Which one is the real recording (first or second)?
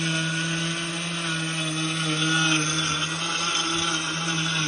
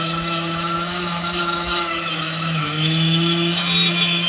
first